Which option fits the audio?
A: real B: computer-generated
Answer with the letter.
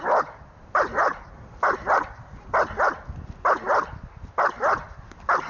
A